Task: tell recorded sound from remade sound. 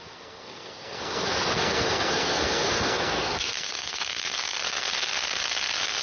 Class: remade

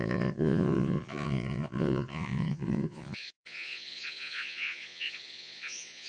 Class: remade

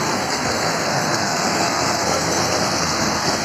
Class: remade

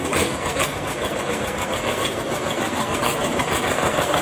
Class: remade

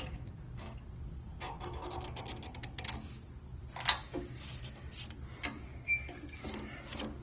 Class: recorded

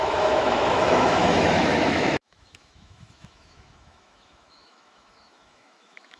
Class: remade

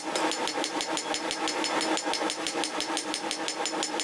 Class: recorded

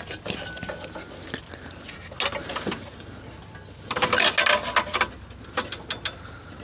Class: recorded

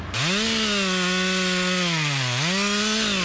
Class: recorded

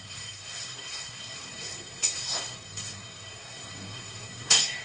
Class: remade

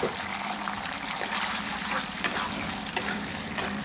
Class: remade